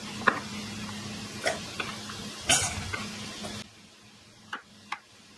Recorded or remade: recorded